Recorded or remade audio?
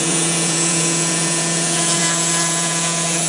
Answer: remade